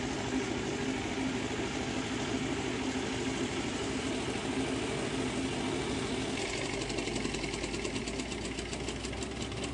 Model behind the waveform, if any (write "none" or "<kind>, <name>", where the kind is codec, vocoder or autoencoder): none